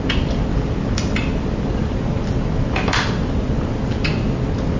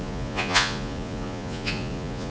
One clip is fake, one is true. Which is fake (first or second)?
second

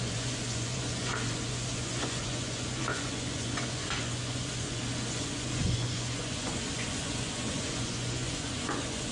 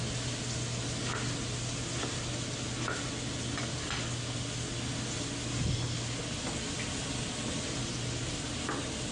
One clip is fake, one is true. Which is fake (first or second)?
first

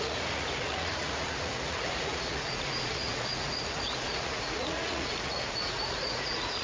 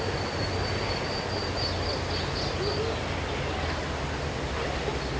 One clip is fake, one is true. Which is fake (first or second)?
first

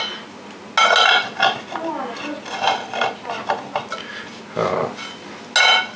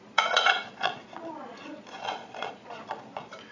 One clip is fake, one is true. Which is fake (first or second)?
second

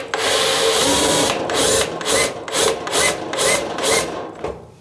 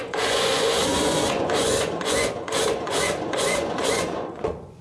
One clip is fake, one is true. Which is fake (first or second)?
second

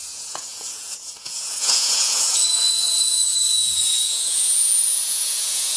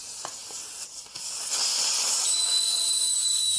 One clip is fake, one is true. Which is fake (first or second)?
first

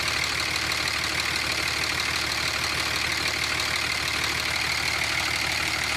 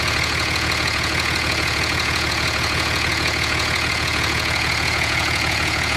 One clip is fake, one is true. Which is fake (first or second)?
second